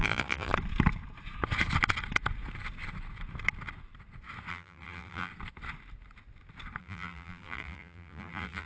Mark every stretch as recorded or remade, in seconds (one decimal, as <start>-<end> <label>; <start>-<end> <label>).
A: 0.0-0.5 remade; 0.5-4.5 recorded; 4.5-5.3 remade; 5.3-6.8 recorded; 6.8-8.7 remade

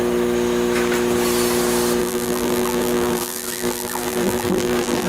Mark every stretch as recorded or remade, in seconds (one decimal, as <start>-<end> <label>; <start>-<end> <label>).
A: 0.0-2.0 recorded; 2.0-5.1 remade

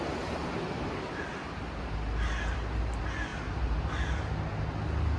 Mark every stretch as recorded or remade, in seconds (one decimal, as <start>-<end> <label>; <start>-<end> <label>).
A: 0.0-0.4 recorded; 0.4-1.3 remade; 1.3-3.3 recorded; 3.3-3.8 remade; 3.8-5.2 recorded

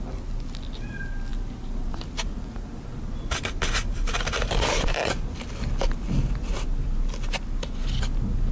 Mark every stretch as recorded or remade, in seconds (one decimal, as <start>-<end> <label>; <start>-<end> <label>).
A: 0.0-1.3 recorded; 1.3-5.4 remade; 5.4-8.5 recorded

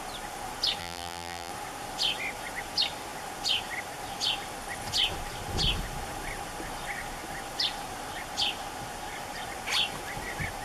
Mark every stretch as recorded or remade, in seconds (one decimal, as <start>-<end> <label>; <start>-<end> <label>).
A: 0.0-0.8 recorded; 0.8-1.5 remade; 1.5-10.6 recorded

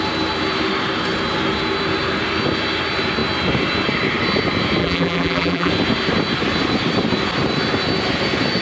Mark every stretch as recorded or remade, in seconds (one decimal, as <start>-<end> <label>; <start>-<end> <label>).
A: 0.0-4.8 recorded; 4.8-5.7 remade; 5.7-8.6 recorded